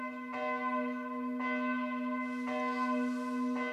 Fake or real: real